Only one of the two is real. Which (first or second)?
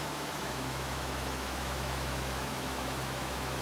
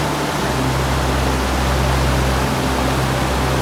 second